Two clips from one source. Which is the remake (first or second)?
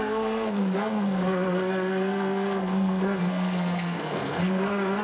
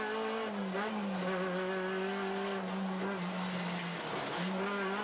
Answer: first